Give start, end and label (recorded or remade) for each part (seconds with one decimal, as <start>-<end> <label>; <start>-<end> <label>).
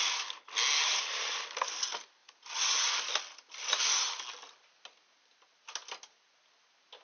0.0-0.9 recorded; 0.9-1.8 remade; 1.8-2.2 recorded; 2.2-3.7 remade; 3.7-7.0 recorded